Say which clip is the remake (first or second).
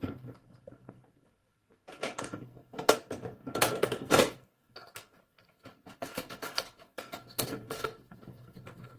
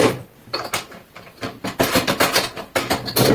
first